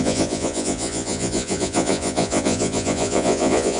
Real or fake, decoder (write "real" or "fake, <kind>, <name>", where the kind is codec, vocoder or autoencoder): fake, vocoder, Vocos